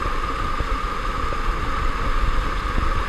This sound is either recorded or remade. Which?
recorded